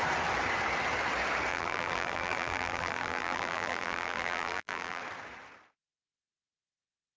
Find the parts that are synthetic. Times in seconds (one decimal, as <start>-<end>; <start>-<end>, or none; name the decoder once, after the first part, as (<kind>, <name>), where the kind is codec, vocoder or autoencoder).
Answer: 1.5-5.0 (vocoder, BigVGAN v2)